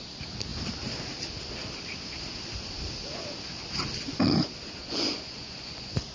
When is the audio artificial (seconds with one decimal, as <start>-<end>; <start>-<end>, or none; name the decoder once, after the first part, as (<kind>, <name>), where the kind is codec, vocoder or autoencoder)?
4.8-6.1 (vocoder, Vocos)